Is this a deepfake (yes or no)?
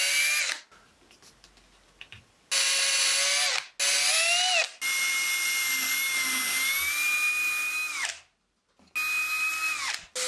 no